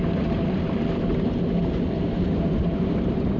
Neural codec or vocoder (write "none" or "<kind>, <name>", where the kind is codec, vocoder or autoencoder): vocoder, BigVGAN v2